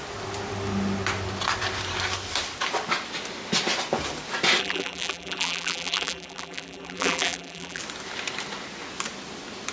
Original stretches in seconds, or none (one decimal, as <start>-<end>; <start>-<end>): 0.0-4.6; 7.8-9.7